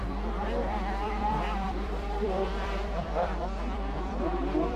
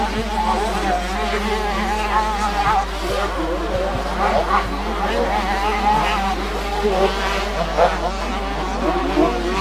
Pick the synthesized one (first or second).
first